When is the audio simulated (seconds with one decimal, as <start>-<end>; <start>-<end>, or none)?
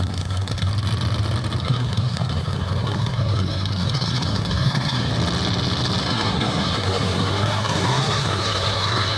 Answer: 0.0-0.7; 1.6-5.1; 6.0-9.2